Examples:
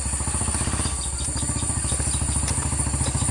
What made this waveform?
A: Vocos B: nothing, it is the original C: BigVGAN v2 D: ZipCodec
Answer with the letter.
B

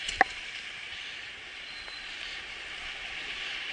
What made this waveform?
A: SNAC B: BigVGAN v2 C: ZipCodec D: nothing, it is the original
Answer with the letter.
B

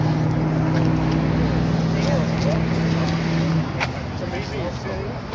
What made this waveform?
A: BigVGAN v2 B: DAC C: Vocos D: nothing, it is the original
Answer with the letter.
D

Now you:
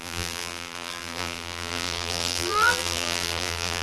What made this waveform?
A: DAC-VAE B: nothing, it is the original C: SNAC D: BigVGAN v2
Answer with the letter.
D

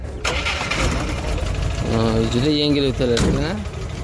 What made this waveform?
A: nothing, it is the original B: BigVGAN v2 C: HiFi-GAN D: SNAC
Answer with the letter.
A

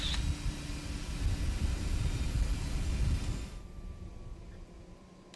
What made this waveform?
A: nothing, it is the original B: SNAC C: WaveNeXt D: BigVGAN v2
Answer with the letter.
A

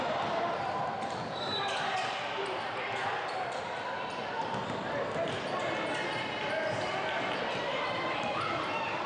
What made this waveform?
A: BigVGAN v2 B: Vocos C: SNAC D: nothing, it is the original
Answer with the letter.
A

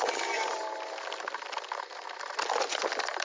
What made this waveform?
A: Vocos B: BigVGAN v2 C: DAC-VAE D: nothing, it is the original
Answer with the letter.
D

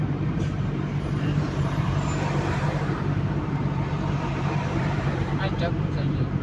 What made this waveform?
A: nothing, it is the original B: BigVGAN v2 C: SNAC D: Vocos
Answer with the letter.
B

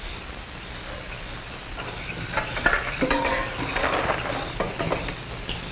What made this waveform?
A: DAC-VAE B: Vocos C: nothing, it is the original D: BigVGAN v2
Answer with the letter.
C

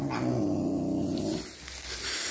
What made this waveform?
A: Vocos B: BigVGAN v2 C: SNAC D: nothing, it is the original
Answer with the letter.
D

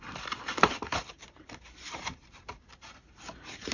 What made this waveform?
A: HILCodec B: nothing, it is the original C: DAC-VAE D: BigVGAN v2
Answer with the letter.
D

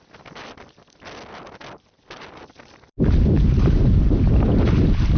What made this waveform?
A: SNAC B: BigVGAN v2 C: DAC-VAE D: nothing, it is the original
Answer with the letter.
D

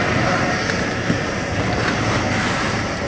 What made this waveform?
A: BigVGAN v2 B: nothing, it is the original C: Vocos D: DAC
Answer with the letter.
A